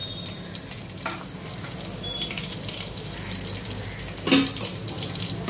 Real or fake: real